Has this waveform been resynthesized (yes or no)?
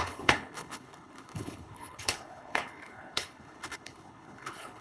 yes